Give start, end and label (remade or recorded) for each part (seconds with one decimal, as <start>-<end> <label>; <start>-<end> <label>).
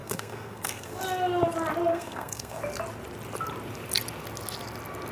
0.0-1.0 remade; 1.0-1.9 recorded; 1.9-2.6 remade; 2.6-5.1 recorded